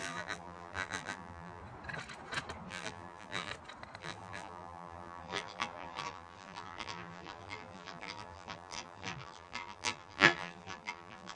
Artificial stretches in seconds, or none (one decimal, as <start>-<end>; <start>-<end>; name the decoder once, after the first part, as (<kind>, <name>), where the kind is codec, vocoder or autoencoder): 0.0-1.6 (vocoder, BigVGAN v2); 2.7-3.5; 4.0-11.4